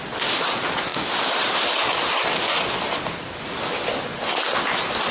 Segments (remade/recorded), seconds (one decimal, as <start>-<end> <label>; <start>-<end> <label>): 0.0-5.1 recorded